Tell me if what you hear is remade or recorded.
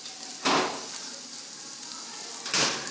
recorded